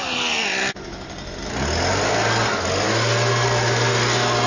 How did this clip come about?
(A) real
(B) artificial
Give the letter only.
A